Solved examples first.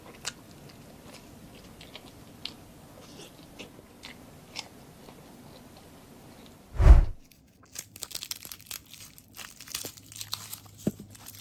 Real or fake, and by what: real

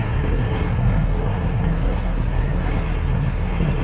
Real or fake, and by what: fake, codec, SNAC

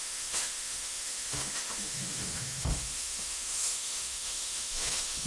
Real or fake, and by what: fake, autoencoder, DAC-VAE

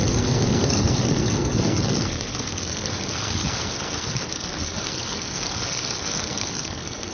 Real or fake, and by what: fake, codec, SNAC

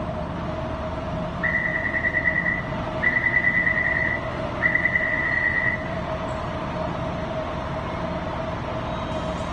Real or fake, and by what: real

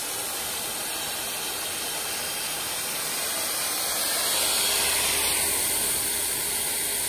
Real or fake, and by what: real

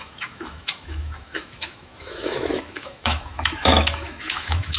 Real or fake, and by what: fake, autoencoder, DAC-VAE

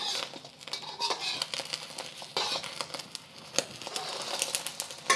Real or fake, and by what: real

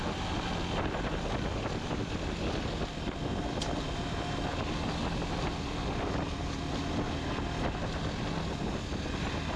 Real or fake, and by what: real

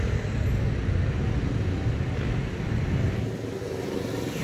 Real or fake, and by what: real